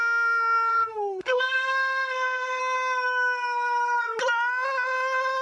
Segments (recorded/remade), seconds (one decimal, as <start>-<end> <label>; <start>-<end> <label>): 0.0-0.7 recorded; 0.7-2.6 remade; 2.6-5.4 recorded